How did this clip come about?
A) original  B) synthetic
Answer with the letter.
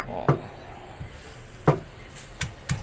A